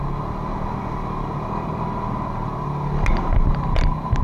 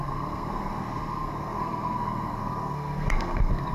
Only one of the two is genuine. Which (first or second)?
first